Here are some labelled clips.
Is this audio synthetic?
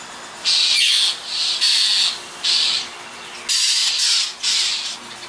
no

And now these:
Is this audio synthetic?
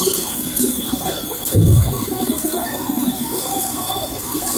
yes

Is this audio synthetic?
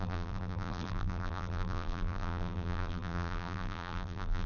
yes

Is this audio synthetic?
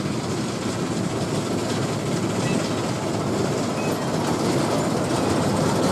no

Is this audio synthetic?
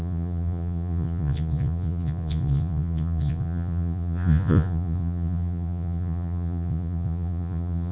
yes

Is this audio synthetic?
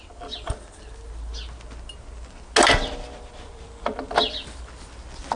no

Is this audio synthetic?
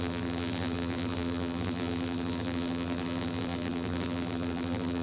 yes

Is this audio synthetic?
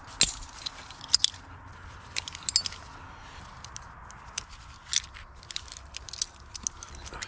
no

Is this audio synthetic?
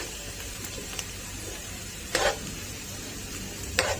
yes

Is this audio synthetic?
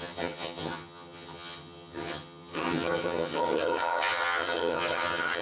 yes